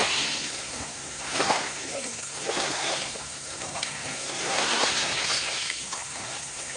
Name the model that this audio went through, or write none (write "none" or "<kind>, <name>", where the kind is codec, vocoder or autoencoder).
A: codec, SNAC